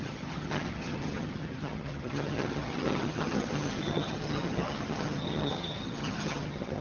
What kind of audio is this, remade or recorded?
remade